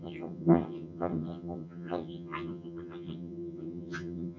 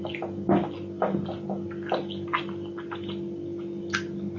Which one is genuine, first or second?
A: second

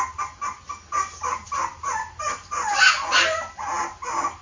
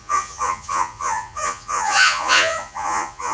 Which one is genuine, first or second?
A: first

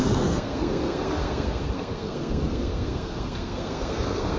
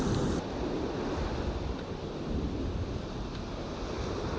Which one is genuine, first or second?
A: second